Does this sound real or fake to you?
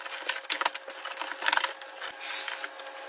real